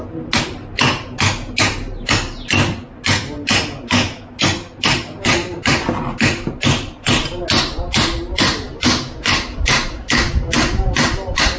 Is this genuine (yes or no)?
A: yes